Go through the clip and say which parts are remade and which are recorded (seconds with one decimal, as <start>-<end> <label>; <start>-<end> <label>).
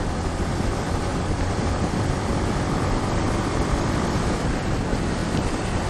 0.0-1.1 recorded; 1.1-4.6 remade; 4.6-5.2 recorded; 5.2-5.9 remade